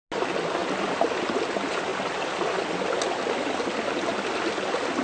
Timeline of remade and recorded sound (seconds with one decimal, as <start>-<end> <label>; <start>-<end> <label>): 0.0-5.0 recorded

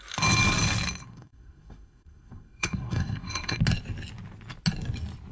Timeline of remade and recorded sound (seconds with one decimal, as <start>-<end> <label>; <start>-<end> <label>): 0.0-1.0 recorded; 1.0-3.6 remade; 3.6-5.3 recorded

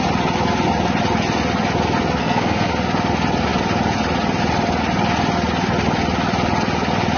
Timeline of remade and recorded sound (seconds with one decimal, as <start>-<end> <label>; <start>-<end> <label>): 0.0-2.2 recorded; 2.2-2.7 remade; 2.7-7.2 recorded

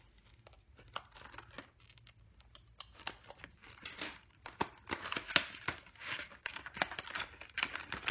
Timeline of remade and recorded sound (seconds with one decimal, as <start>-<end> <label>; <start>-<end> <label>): 0.0-6.0 recorded; 6.0-6.8 remade; 6.8-8.1 recorded